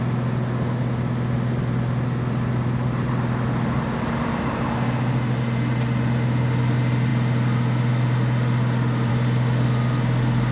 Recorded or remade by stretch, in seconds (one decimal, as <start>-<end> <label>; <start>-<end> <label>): 0.0-10.5 recorded

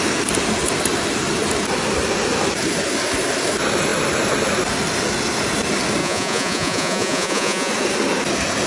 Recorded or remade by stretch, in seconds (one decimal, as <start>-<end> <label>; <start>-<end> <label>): 0.0-6.0 recorded; 6.0-7.7 remade; 7.7-8.7 recorded